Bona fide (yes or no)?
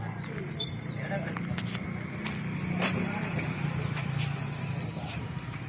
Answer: no